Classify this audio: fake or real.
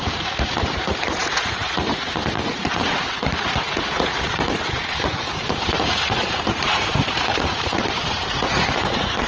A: fake